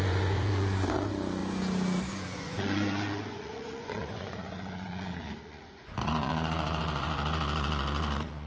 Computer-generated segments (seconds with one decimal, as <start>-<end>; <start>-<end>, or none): 0.0-1.4; 2.1-8.5